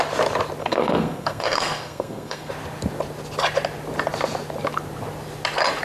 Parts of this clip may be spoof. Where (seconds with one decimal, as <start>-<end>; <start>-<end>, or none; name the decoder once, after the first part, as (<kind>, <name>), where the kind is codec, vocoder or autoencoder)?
0.6-2.5 (codec, SNAC)